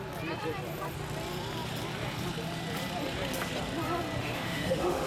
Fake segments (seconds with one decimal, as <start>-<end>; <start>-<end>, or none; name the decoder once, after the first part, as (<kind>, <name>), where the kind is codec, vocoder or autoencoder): 4.2-5.1 (autoencoder, DAC-VAE)